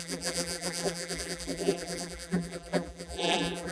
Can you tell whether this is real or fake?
fake